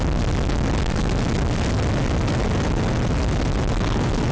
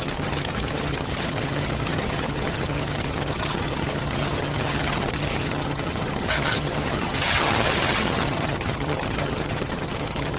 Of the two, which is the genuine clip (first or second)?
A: first